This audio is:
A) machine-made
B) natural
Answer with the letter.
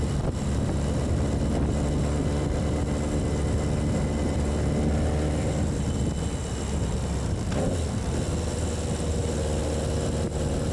B